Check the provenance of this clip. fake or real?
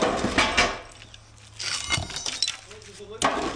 real